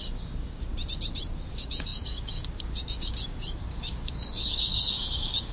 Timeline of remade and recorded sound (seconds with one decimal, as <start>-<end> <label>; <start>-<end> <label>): 0.0-0.7 remade; 0.7-1.4 recorded; 1.4-5.5 remade